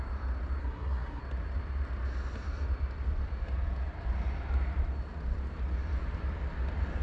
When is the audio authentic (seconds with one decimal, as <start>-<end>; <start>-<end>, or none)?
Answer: 0.0-0.6; 1.2-7.0